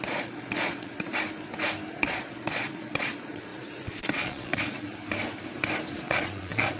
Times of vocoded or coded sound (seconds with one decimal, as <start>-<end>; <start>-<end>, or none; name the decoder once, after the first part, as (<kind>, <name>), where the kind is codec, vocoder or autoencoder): 0.0-1.1 (vocoder, Vocos); 1.9-5.0; 5.9-6.8